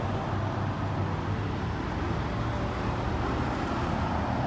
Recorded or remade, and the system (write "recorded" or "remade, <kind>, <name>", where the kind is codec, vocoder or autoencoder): recorded